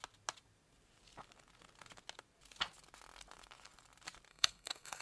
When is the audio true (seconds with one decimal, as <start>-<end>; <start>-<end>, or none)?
0.0-4.3